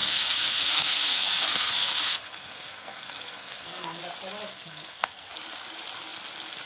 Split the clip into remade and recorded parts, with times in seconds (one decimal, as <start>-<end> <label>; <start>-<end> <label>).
0.0-4.0 remade; 4.0-4.5 recorded; 4.5-5.3 remade; 5.3-6.7 recorded

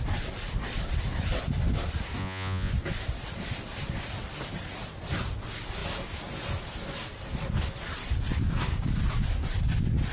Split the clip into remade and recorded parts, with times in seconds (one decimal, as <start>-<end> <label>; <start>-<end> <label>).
0.0-2.2 recorded; 2.2-2.7 remade; 2.7-10.1 recorded

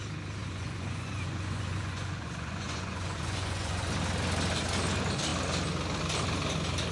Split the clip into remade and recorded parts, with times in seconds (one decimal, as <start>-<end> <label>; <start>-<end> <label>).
0.0-0.4 recorded; 0.4-3.9 remade; 3.9-6.9 recorded

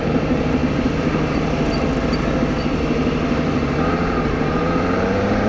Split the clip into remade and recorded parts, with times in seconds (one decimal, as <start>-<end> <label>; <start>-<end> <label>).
0.0-0.6 remade; 0.6-3.9 recorded; 3.9-5.5 remade

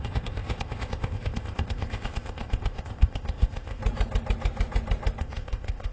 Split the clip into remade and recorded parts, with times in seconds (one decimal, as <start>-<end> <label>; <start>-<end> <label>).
0.0-3.8 remade; 3.8-5.2 recorded; 5.2-5.9 remade

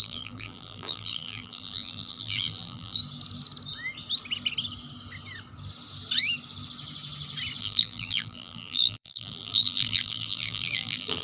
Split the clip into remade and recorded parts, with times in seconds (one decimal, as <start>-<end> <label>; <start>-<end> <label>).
0.0-3.0 remade; 3.0-7.6 recorded; 7.6-11.2 remade